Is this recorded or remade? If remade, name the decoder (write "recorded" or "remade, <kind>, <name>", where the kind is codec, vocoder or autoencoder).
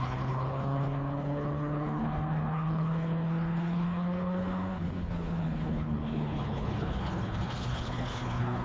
remade, codec, HILCodec